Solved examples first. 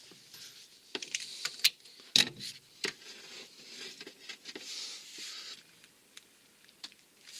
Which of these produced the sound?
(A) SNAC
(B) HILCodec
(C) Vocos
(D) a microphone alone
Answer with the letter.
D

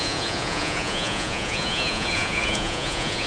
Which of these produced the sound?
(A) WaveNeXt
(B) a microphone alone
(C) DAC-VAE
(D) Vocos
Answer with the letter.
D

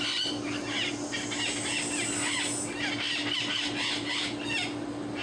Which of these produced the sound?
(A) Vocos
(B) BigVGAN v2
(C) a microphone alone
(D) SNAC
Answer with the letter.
C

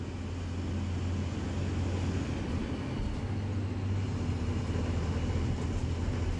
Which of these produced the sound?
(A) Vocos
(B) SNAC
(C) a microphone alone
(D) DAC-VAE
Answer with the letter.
C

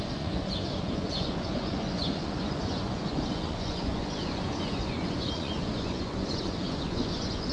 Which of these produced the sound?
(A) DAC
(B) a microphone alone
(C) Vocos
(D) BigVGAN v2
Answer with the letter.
C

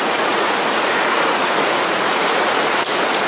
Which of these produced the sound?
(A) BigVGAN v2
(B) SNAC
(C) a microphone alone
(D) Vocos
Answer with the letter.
D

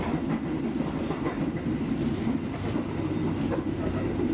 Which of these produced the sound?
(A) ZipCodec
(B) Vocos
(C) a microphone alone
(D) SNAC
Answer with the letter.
C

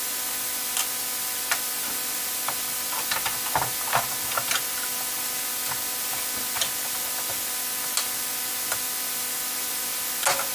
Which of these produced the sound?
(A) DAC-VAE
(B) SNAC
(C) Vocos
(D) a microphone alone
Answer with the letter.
D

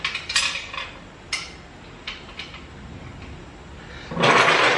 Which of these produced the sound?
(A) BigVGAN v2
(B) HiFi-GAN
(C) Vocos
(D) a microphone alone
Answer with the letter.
D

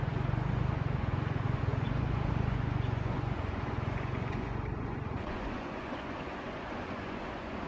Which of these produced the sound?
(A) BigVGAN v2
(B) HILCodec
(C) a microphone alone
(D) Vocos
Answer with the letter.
D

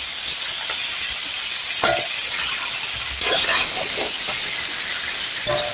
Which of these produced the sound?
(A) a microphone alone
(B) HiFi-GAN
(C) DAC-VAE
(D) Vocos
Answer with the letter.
A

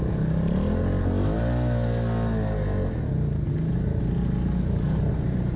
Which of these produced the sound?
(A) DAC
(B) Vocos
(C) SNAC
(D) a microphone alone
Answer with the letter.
D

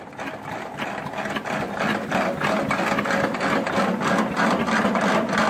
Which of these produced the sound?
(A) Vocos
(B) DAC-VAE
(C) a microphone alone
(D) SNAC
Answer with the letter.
C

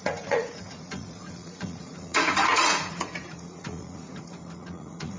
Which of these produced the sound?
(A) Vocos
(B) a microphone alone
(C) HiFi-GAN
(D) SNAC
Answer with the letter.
A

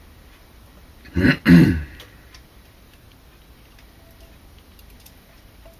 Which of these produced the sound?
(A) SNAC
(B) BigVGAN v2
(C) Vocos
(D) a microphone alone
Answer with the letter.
D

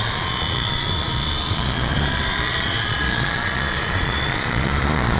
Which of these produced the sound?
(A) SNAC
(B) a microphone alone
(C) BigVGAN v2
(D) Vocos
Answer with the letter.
D